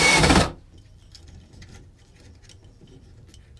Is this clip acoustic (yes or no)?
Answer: no